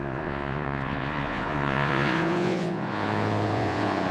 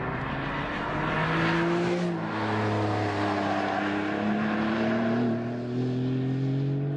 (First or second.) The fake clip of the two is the first